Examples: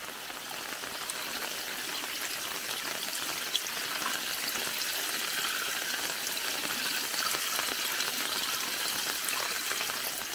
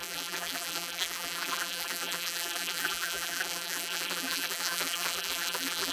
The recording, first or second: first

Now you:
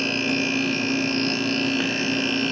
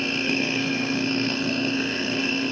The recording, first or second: first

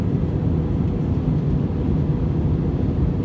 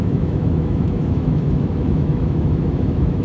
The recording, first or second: first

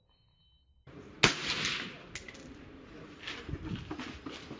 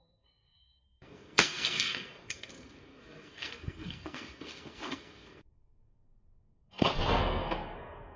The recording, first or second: first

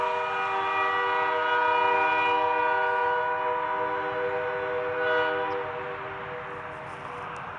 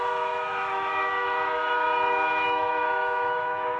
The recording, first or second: first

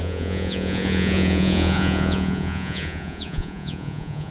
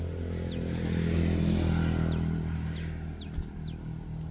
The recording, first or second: second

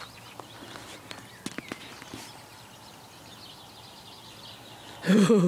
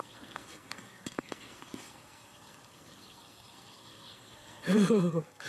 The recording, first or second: first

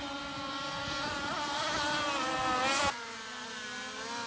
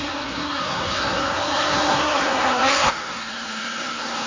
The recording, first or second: first